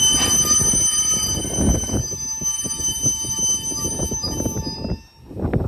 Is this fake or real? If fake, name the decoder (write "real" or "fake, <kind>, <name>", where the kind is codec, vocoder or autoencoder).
real